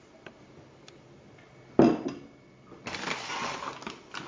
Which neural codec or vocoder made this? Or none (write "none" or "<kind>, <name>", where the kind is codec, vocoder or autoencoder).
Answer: none